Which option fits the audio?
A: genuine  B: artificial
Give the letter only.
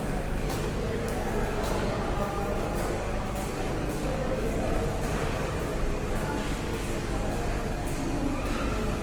B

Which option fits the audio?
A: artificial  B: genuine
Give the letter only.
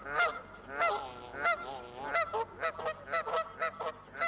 B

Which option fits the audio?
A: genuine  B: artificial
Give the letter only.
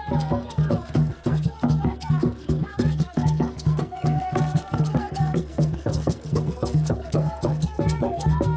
B